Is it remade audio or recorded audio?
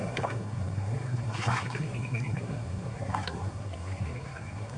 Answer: remade